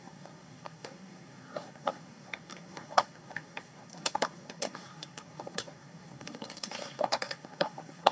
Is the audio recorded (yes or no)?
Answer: no